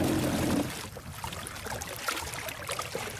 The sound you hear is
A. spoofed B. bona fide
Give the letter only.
B